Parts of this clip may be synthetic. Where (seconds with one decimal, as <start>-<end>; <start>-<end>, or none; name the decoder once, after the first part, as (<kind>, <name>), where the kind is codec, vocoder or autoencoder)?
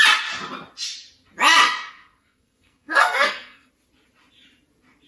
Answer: 1.6-3.7 (codec, SNAC)